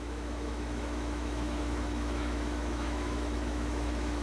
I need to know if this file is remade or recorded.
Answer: remade